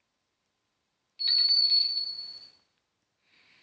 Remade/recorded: recorded